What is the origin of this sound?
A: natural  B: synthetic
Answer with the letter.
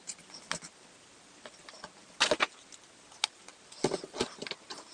A